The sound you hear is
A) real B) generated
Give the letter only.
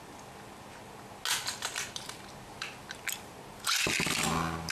A